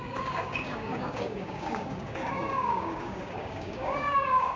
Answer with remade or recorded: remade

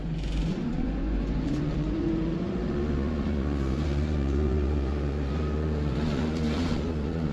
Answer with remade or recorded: remade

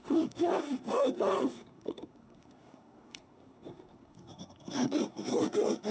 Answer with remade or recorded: remade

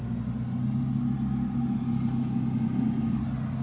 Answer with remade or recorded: recorded